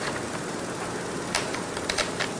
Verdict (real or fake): real